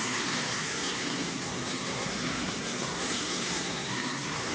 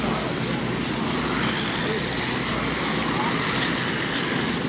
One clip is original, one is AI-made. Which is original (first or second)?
second